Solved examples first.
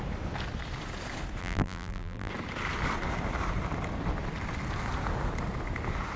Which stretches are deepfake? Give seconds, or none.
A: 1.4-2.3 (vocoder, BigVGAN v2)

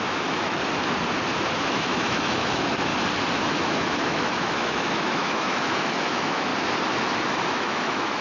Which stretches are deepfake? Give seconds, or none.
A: 0.0-0.6 (autoencoder, DAC-VAE); 1.7-2.9; 3.5-6.5; 7.5-8.2